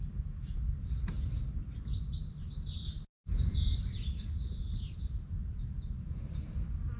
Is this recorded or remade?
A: recorded